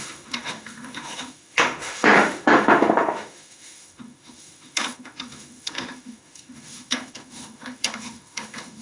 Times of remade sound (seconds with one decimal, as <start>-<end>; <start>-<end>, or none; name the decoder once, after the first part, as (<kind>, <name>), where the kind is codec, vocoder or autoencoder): 0.0-8.8 (autoencoder, DAC-VAE)